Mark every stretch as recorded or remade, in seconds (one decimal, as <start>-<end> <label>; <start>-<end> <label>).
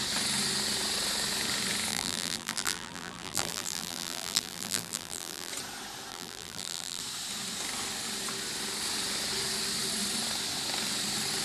0.0-1.9 recorded; 1.9-5.5 remade; 5.5-6.1 recorded; 6.1-7.0 remade; 7.0-11.4 recorded